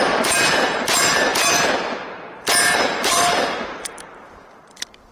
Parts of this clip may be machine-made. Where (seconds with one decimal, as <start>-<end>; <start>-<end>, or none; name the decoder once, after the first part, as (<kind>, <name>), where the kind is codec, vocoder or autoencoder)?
0.0-5.1 (vocoder, BigVGAN v2)